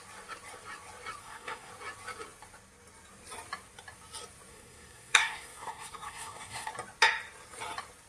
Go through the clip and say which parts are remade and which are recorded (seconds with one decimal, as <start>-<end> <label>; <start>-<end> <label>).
0.0-1.2 recorded; 1.2-1.7 remade; 1.7-4.5 recorded; 4.5-6.7 remade; 6.7-8.1 recorded